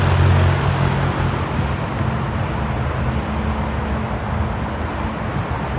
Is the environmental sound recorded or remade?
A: recorded